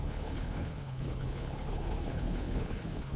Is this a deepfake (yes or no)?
yes